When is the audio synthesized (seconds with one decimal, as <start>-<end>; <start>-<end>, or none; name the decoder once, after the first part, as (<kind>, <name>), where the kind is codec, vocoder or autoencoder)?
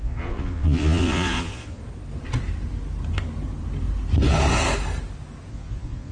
0.0-1.8 (vocoder, Vocos); 5.5-6.1